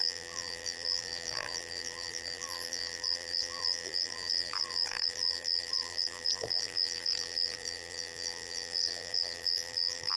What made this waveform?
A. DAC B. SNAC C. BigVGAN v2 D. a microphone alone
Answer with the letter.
C